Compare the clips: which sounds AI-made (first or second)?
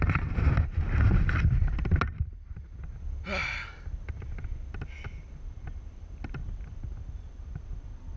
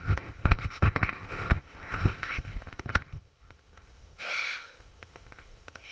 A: second